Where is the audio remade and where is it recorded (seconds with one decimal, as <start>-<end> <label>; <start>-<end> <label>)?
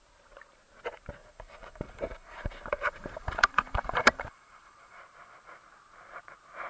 0.0-1.2 recorded; 1.2-5.0 remade; 5.0-6.7 recorded